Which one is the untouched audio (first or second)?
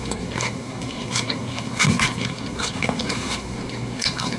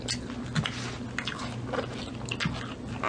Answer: second